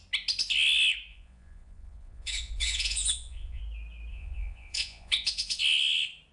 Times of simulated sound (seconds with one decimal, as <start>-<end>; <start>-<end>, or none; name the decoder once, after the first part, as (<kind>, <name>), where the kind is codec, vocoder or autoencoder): 1.1-3.6 (vocoder, Vocos); 4.1-5.6